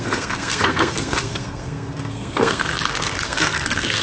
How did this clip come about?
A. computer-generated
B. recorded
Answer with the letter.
A